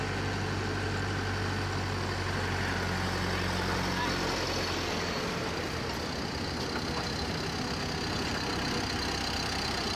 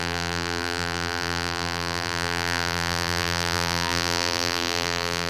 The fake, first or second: second